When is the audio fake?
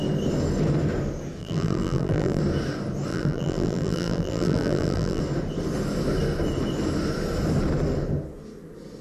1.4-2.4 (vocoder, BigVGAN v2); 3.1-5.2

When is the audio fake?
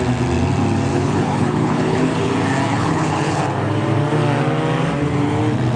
0.9-2.3 (codec, HILCodec); 2.7-3.4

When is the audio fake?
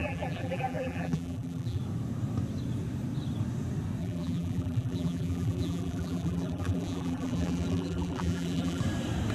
0.0-1.8 (vocoder, BigVGAN v2); 4.0-8.8